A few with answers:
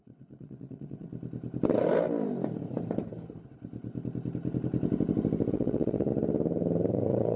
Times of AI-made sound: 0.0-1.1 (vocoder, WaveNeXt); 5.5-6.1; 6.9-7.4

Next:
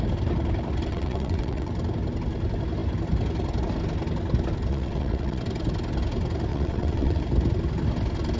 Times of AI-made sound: 0.9-1.7 (vocoder, WaveNeXt); 4.7-5.4; 6.5-7.2

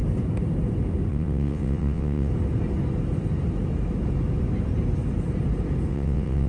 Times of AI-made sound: 1.1-2.3 (vocoder, WaveNeXt); 5.9-6.5